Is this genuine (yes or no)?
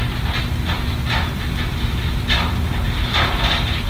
yes